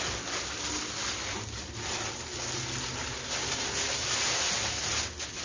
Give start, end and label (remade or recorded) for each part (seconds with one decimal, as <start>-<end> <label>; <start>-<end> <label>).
0.0-5.4 recorded